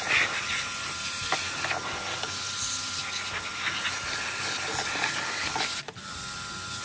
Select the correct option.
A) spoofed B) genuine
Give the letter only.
B